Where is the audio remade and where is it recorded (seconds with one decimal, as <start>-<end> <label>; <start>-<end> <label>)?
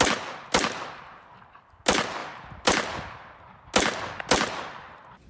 0.0-5.3 recorded